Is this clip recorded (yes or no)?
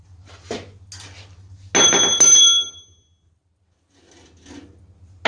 yes